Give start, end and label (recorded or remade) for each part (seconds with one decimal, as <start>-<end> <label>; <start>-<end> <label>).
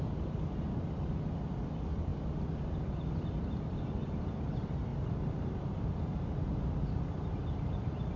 0.0-4.9 remade; 4.9-7.4 recorded; 7.4-8.2 remade